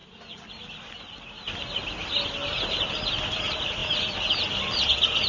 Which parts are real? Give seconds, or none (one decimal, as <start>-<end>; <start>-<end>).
0.0-5.3